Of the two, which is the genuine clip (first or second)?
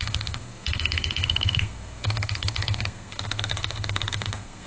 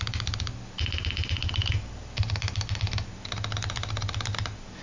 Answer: second